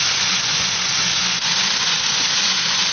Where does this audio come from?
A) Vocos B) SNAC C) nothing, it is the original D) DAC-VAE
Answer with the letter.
A